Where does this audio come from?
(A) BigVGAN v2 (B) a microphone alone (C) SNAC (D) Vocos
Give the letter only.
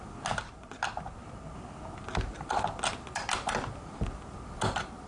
B